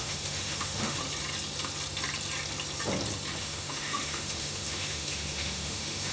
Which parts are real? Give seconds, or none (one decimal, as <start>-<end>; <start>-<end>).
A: 1.0-3.4